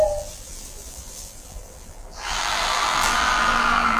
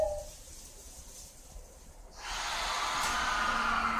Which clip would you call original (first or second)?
second